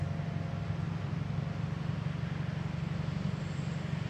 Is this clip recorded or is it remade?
recorded